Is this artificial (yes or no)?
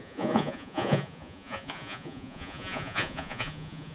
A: yes